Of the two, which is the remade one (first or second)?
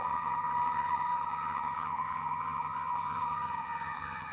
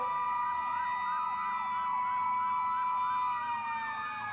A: first